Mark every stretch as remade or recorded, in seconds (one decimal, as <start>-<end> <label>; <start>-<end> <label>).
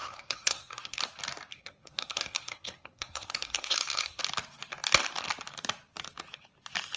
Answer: 0.0-1.0 remade; 1.0-1.5 recorded; 1.5-4.2 remade; 4.2-7.0 recorded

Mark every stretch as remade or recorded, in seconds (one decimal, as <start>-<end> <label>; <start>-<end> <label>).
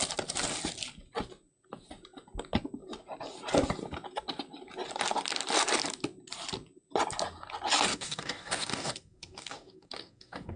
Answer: 0.0-7.9 recorded; 7.9-10.6 remade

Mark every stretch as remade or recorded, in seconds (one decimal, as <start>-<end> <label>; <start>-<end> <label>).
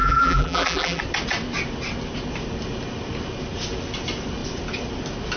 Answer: 0.0-1.0 remade; 1.0-5.4 recorded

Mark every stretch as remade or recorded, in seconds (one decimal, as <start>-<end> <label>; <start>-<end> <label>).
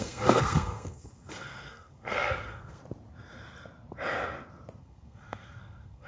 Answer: 0.0-2.8 remade; 2.8-4.8 recorded; 4.8-6.1 remade